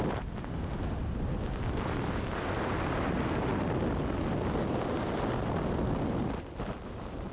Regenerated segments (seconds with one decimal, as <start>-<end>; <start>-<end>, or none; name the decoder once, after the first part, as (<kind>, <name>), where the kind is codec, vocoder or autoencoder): 1.0-2.7 (vocoder, BigVGAN v2)